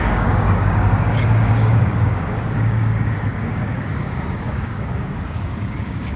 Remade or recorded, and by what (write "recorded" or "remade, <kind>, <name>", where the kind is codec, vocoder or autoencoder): remade, codec, DAC